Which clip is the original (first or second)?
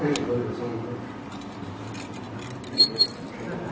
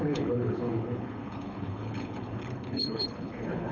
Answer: first